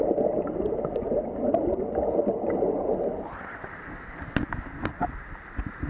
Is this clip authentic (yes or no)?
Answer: yes